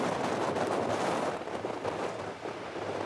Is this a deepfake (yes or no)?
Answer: no